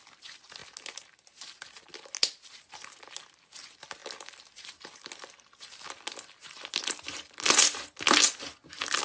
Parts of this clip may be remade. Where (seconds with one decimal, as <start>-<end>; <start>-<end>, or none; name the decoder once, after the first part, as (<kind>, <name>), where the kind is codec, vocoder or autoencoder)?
none